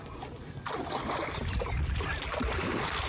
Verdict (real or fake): real